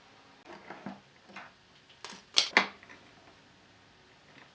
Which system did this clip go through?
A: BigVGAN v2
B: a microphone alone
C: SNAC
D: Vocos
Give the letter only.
B